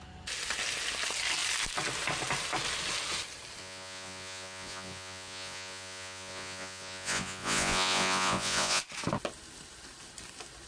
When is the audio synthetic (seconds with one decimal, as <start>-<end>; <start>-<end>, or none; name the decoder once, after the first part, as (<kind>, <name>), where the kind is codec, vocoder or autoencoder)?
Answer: 3.6-8.8 (vocoder, Vocos)